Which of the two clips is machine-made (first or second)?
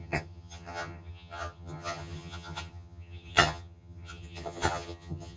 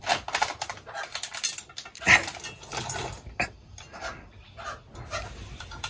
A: first